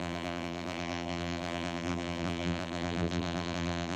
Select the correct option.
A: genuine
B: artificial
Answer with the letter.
B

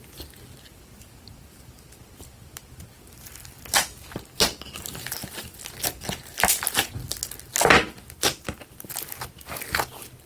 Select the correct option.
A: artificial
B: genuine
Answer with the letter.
B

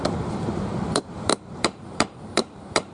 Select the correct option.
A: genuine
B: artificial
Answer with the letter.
B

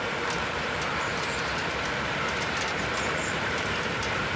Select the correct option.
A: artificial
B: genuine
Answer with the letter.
A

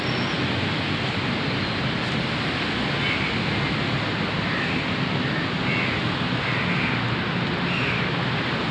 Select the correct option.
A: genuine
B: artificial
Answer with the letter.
A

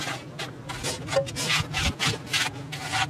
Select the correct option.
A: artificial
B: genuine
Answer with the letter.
B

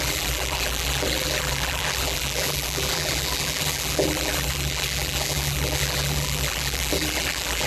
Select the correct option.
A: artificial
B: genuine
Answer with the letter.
A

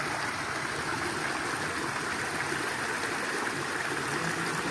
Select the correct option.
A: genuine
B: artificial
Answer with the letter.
A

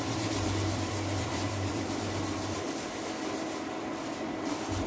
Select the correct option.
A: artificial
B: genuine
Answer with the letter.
A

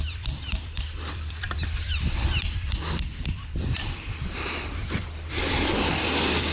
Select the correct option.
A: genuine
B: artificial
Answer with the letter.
B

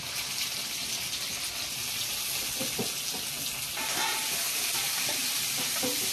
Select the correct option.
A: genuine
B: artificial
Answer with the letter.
A